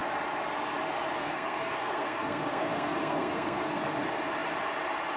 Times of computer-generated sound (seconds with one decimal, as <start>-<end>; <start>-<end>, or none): 1.2-3.8